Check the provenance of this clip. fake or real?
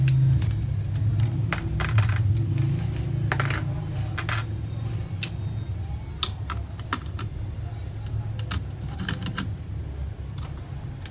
real